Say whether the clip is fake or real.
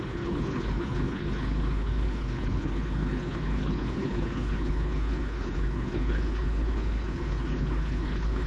fake